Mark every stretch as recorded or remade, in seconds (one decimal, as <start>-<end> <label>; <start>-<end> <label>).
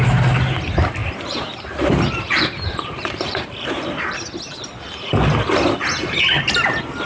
0.0-1.0 recorded; 1.0-4.3 remade; 4.3-7.1 recorded